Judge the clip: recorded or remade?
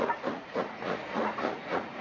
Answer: remade